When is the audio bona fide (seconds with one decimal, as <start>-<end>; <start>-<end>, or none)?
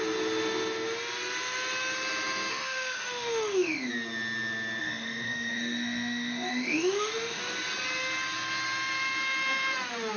0.0-2.5; 3.9-4.8; 7.4-10.2